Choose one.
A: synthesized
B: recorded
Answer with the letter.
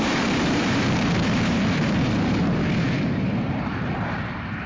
A